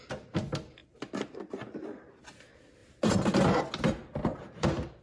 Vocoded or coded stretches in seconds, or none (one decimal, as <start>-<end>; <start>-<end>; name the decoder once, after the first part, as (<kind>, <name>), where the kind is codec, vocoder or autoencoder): 4.3-5.0 (vocoder, BigVGAN v2)

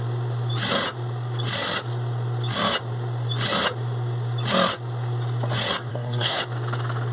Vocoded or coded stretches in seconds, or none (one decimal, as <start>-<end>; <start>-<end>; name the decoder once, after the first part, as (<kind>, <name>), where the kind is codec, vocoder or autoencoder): 5.9-6.4 (codec, SNAC)